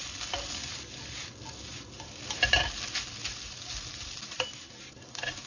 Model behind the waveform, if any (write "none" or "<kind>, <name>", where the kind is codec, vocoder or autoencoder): none